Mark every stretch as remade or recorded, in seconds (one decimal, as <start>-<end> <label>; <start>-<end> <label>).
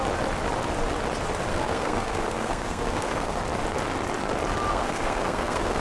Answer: 0.0-1.5 recorded; 1.5-3.4 remade; 3.4-4.7 recorded; 4.7-5.8 remade